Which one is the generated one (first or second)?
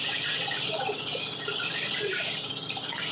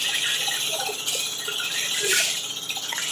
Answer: first